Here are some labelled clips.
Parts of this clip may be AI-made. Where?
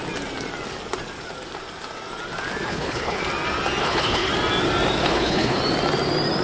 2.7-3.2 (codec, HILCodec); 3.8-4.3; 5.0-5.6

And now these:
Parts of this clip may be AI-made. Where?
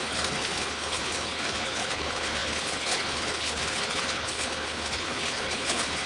0.0-6.1 (codec, HILCodec)